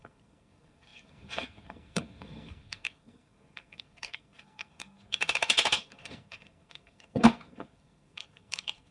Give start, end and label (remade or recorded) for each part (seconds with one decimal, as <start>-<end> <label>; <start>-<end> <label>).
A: 0.0-8.9 remade